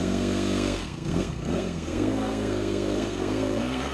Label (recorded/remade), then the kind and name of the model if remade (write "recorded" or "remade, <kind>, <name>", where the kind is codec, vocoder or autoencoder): remade, codec, SNAC